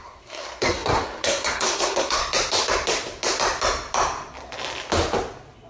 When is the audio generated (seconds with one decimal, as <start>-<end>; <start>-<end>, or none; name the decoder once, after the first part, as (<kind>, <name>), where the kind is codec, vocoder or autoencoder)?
0.0-2.2 (codec, SNAC)

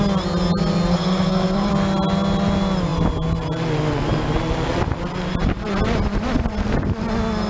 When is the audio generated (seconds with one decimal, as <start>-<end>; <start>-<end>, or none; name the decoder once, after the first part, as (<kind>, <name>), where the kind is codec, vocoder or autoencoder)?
0.9-1.7 (codec, SNAC)